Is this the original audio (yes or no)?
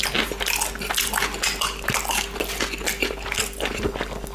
yes